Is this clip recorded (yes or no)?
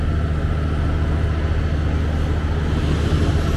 yes